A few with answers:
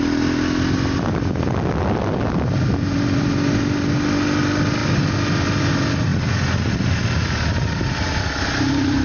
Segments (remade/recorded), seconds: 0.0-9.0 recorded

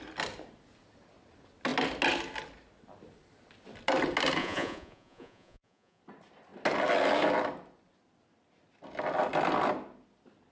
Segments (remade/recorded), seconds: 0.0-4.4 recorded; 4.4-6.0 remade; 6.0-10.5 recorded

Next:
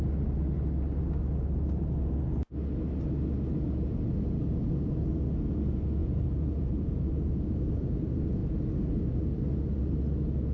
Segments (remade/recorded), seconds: 0.0-6.0 recorded; 6.0-7.5 remade; 7.5-10.5 recorded

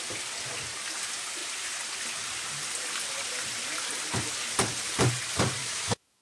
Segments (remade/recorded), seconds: 0.0-5.6 recorded; 5.6-6.2 remade